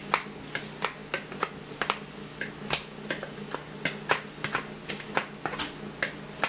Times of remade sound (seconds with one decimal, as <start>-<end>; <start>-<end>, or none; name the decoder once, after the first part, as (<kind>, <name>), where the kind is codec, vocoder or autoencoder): none